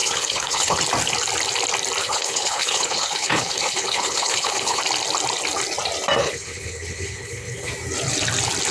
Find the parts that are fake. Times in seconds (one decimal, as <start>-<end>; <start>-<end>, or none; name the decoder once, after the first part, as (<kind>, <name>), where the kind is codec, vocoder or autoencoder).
0.0-0.8 (codec, HILCodec); 2.0-4.8; 6.2-7.7